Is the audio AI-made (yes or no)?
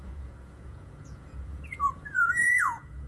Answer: yes